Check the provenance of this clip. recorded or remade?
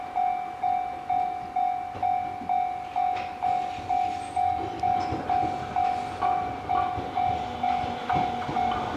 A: recorded